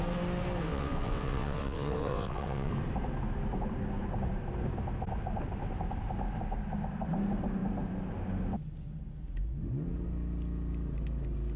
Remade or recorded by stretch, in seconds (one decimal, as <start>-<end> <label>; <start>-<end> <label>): 0.0-0.7 recorded; 0.7-2.7 remade; 2.7-11.6 recorded